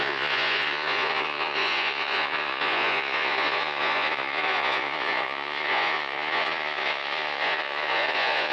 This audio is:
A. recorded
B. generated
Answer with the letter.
B